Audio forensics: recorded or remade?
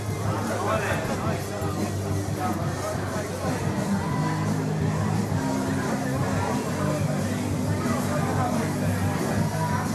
recorded